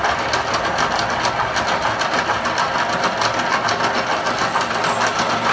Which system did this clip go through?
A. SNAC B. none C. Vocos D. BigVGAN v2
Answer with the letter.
B